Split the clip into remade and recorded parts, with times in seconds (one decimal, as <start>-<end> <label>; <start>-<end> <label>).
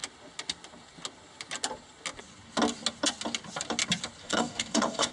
0.0-4.2 recorded; 4.2-5.1 remade